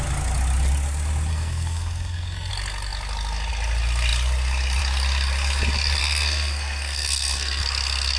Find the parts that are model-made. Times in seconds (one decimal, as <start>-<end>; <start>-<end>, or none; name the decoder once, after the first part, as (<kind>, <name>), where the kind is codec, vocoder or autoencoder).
1.3-2.5 (codec, SNAC); 6.0-7.6